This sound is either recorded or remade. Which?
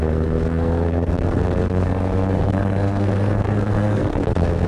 remade